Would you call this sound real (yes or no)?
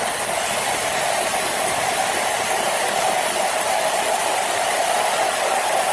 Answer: yes